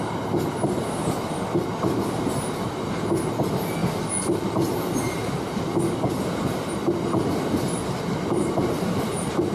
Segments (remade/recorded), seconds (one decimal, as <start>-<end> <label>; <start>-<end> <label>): 0.0-9.5 recorded